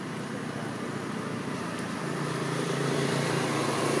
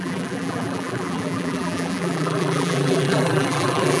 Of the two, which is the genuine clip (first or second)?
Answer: first